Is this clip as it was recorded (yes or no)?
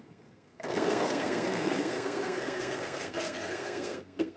no